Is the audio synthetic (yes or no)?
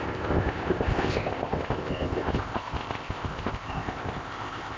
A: yes